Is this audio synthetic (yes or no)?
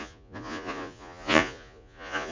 yes